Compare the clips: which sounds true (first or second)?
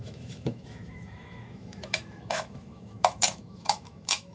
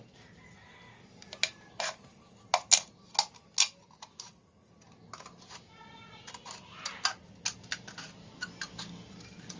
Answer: second